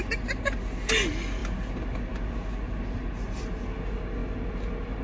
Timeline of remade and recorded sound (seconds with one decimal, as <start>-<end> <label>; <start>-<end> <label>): 0.0-5.0 recorded